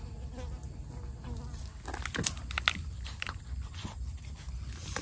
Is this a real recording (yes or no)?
yes